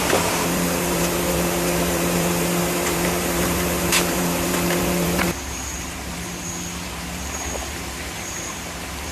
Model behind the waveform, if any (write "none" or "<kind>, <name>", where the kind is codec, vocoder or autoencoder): vocoder, BigVGAN v2